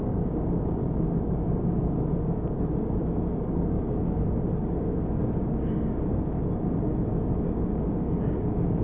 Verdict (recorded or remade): remade